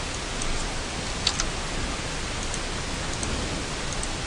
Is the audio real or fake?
real